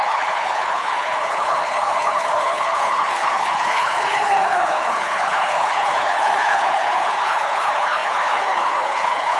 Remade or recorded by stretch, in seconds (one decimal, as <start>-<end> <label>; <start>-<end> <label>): 0.0-9.4 remade